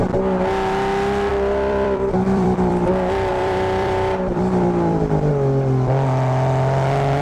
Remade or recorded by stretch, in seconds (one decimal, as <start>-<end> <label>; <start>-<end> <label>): 0.0-1.3 recorded; 1.3-2.9 remade; 2.9-3.3 recorded; 3.3-5.3 remade; 5.3-7.2 recorded